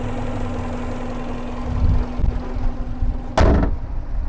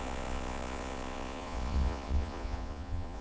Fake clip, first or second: second